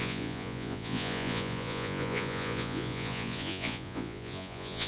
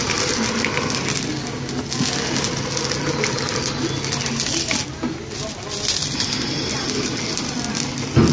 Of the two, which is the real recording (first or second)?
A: second